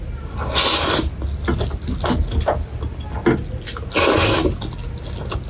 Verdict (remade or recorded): recorded